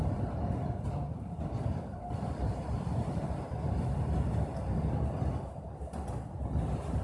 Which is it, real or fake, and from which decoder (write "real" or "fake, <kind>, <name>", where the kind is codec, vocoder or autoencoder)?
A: real